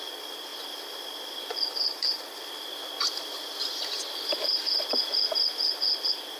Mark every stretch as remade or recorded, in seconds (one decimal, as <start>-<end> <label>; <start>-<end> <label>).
0.0-0.5 recorded; 0.5-3.8 remade; 3.8-6.4 recorded